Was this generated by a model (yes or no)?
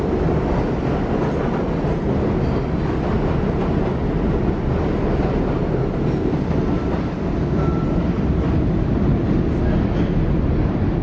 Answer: no